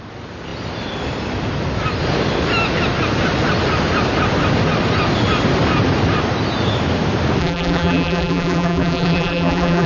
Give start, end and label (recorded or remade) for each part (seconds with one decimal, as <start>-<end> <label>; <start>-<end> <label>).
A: 0.0-7.4 recorded; 7.4-9.9 remade